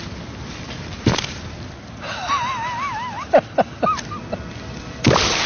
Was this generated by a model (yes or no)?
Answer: no